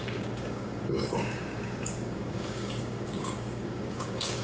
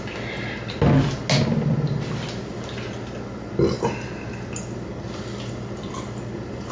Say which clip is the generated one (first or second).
first